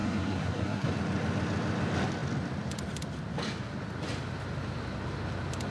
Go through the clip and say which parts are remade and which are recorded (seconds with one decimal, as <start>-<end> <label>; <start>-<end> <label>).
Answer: 0.0-0.9 remade; 0.9-5.7 recorded